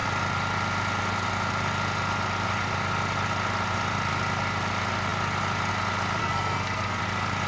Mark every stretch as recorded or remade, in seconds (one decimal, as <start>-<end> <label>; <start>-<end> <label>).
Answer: 0.0-6.2 recorded; 6.2-7.0 remade; 7.0-7.5 recorded